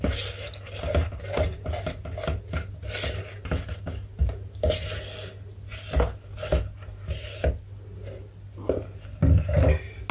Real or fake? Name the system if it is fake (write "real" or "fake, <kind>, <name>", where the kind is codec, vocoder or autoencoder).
real